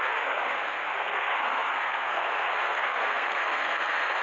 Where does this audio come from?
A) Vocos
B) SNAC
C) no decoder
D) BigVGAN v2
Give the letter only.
B